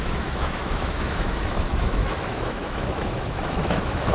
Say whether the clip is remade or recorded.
remade